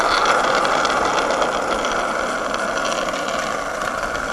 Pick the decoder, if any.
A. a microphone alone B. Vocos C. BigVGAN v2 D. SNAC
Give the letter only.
A